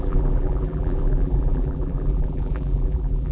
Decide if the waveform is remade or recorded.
remade